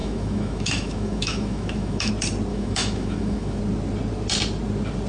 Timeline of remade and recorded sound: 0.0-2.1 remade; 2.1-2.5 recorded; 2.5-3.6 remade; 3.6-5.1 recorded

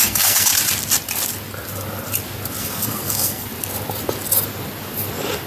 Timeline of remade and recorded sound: 0.0-0.5 remade; 0.5-2.6 recorded; 2.6-3.5 remade; 3.5-5.5 recorded

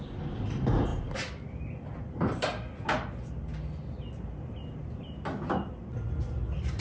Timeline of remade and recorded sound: 0.0-6.8 recorded

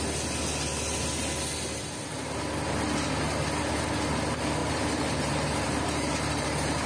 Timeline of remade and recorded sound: 0.0-4.6 recorded; 4.6-6.9 remade